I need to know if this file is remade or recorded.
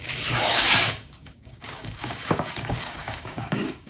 remade